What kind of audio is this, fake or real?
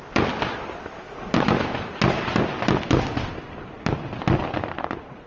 real